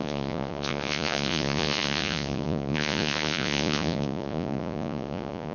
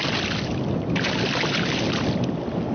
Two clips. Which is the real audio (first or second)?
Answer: second